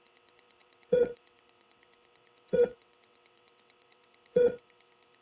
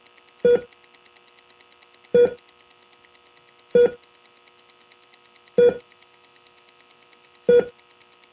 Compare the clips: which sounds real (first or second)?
second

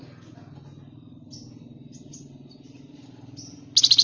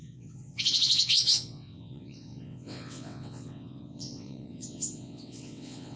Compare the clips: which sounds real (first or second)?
first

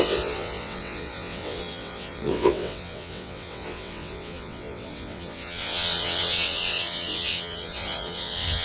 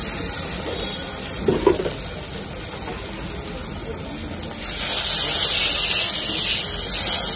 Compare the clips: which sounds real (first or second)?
second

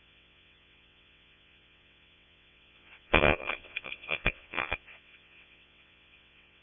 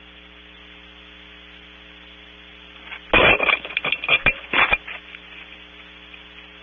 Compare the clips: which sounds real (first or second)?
second